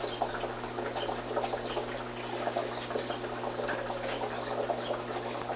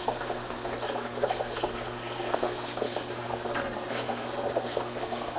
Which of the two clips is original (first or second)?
first